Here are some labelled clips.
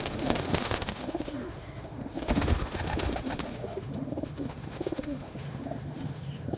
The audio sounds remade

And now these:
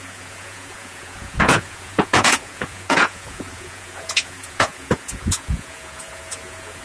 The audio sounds remade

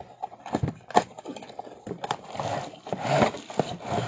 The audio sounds recorded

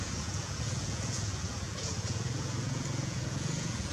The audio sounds remade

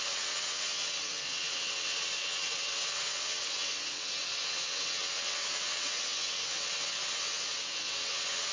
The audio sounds remade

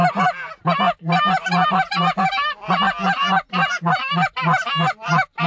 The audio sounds recorded